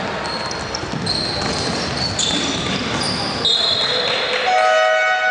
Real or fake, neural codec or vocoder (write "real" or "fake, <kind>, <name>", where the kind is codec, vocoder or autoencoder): real